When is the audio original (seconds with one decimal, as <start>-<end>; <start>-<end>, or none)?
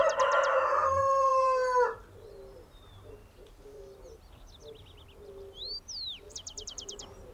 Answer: 0.0-1.3; 3.1-6.3